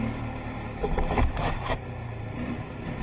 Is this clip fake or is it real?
real